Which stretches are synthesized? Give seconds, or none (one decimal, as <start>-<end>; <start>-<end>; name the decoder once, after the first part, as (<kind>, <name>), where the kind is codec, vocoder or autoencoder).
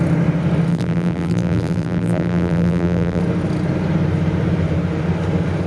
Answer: 0.7-3.2 (vocoder, BigVGAN v2)